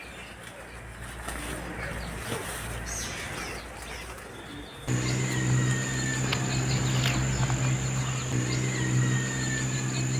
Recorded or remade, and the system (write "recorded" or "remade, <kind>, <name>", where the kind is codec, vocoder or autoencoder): recorded